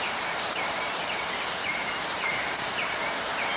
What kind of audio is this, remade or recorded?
remade